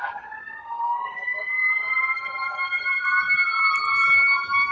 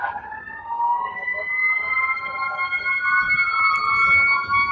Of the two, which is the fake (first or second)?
first